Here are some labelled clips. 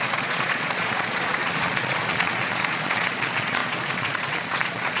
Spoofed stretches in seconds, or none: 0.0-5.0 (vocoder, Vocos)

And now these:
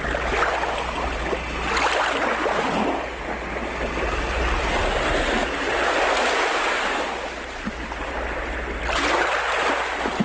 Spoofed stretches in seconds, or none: none

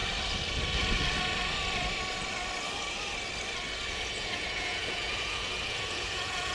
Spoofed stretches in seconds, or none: 3.9-6.5 (vocoder, Vocos)